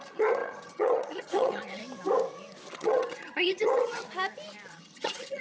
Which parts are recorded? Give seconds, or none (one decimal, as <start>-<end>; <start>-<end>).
1.8-2.7; 4.0-4.7